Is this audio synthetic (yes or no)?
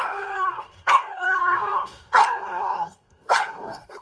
yes